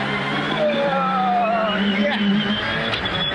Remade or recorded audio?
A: recorded